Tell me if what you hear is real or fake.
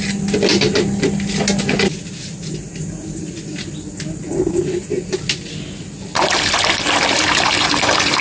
real